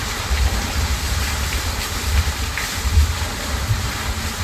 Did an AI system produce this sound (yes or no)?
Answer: no